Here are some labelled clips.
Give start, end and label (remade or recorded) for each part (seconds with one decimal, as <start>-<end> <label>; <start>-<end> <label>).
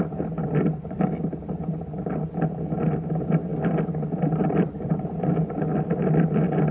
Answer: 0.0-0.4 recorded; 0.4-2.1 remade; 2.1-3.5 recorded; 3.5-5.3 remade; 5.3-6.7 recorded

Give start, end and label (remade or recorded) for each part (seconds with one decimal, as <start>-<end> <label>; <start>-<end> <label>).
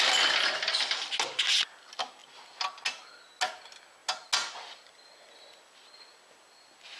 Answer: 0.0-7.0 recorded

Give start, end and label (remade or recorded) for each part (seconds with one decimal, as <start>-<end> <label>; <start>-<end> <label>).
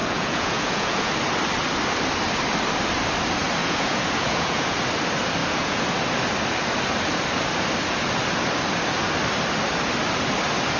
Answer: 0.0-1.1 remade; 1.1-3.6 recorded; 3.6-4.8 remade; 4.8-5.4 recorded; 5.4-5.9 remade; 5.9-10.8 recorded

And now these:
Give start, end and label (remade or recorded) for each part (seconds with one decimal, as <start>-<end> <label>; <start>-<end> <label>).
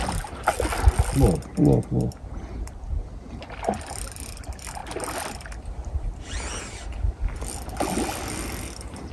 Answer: 0.0-9.1 recorded